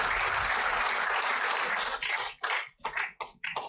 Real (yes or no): yes